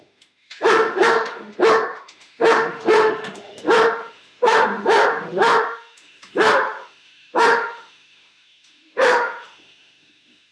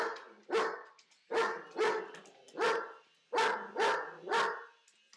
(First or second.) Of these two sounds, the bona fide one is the second